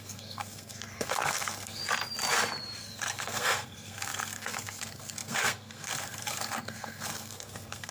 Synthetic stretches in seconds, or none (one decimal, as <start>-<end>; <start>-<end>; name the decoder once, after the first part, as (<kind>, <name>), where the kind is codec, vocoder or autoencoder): 0.0-1.8 (codec, SNAC); 2.8-7.9